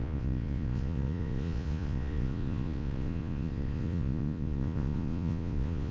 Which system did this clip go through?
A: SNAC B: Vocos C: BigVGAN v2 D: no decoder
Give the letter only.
B